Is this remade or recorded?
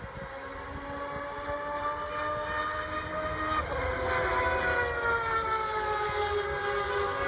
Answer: recorded